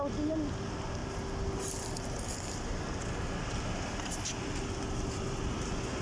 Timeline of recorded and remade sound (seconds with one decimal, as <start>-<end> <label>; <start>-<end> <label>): 0.0-6.0 recorded